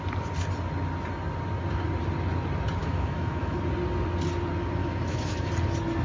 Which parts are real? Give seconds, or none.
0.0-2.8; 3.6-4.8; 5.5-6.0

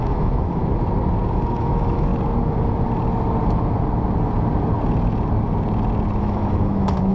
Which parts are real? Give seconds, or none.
0.6-1.3; 2.1-6.2

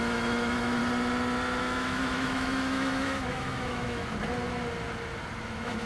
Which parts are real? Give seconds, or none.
0.8-1.6; 4.0-5.4

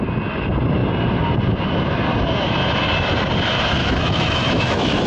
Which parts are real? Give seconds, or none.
0.0-3.8